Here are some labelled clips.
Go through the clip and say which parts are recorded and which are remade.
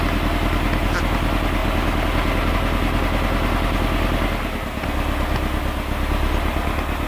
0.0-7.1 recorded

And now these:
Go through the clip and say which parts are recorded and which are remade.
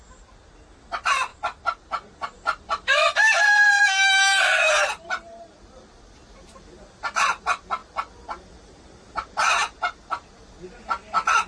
0.0-1.3 recorded; 1.3-6.0 remade; 6.0-7.8 recorded; 7.8-10.3 remade; 10.3-11.5 recorded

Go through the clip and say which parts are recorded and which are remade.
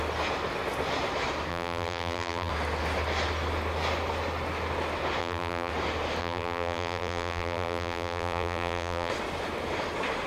0.0-1.5 recorded; 1.5-2.5 remade; 2.5-5.2 recorded; 5.2-5.7 remade; 5.7-6.2 recorded; 6.2-9.1 remade; 9.1-10.3 recorded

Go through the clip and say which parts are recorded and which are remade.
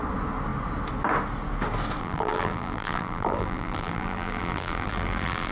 0.0-2.0 recorded; 2.0-5.5 remade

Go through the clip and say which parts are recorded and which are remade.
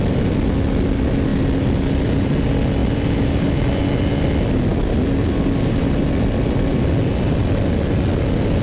0.0-2.8 recorded; 2.8-3.6 remade; 3.6-8.6 recorded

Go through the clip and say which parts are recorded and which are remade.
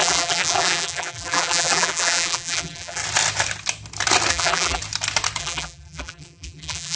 0.0-3.0 remade; 3.0-4.3 recorded; 4.3-4.8 remade; 4.8-5.4 recorded; 5.4-7.0 remade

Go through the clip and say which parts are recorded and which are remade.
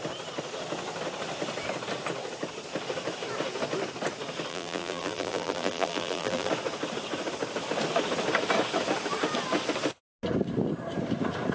0.0-4.5 recorded; 4.5-6.5 remade; 6.5-11.5 recorded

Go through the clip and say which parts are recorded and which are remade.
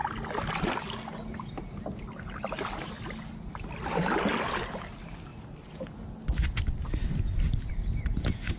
0.0-8.6 recorded